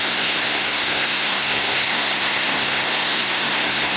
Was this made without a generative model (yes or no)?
no